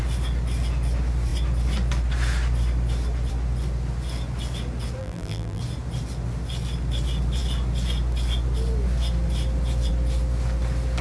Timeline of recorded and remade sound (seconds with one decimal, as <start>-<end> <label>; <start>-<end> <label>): 0.0-5.0 recorded; 5.0-5.6 remade; 5.6-11.0 recorded